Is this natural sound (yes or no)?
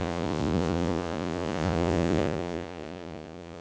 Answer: no